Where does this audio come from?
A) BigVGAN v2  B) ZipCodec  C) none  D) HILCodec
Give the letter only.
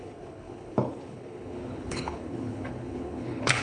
D